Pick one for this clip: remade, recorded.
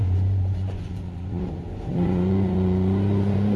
remade